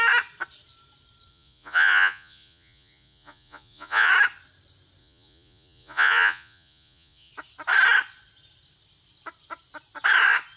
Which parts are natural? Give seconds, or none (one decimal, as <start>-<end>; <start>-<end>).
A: 0.0-1.3; 4.1-5.0; 7.3-10.6